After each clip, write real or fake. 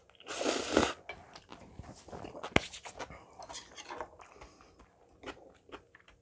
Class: real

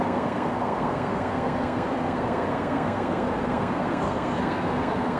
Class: fake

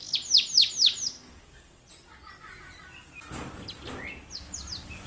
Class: real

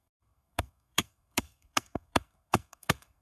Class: fake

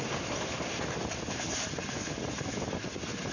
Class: real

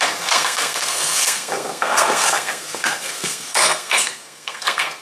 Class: fake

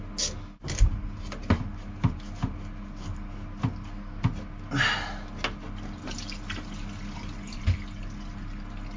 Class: real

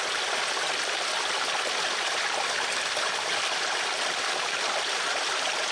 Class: real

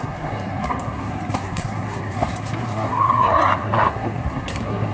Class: fake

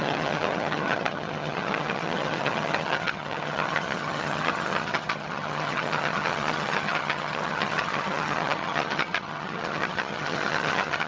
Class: fake